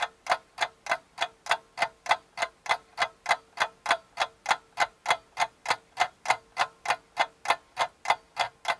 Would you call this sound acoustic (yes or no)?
yes